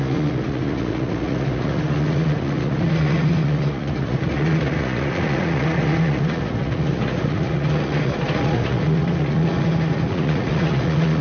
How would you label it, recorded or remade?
remade